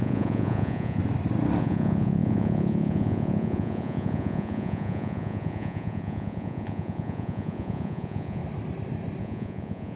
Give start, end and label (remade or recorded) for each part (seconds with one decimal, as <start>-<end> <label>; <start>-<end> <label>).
0.0-1.0 remade; 1.0-1.6 recorded; 1.6-8.4 remade; 8.4-9.2 recorded; 9.2-10.0 remade